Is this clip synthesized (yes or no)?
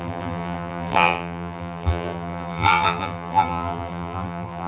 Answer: yes